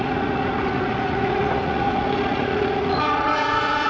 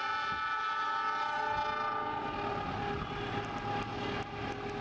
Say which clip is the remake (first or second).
first